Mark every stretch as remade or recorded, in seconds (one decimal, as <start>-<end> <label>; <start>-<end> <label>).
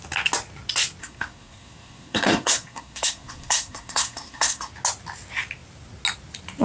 0.0-1.0 recorded; 1.0-4.7 remade; 4.7-6.6 recorded